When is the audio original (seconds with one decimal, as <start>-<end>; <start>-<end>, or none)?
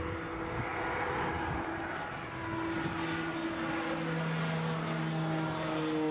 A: 0.0-6.1